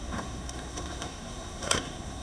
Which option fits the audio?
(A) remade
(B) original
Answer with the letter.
A